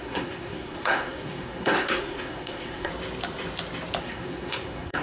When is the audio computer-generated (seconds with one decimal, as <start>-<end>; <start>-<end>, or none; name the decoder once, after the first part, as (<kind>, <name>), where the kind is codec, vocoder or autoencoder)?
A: 0.0-2.9 (codec, SNAC); 4.0-5.0